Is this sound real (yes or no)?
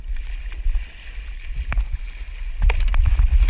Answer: yes